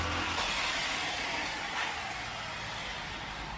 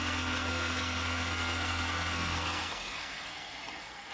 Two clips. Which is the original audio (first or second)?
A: first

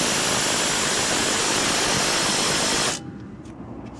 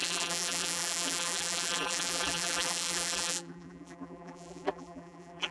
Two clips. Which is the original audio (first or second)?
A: first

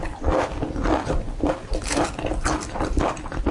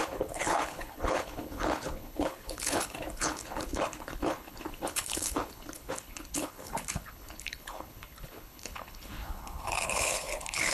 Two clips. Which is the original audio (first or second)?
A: first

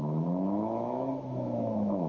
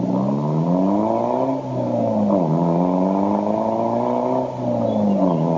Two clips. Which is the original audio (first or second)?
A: second